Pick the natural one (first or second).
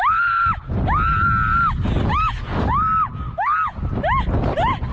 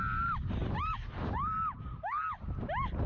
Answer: first